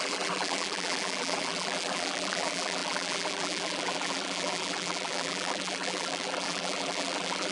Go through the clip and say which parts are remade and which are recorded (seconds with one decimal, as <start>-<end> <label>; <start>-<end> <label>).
0.0-7.5 remade